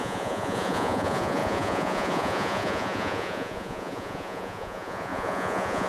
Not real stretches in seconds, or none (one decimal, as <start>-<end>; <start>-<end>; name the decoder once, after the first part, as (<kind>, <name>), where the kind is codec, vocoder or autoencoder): 0.0-5.9 (vocoder, Vocos)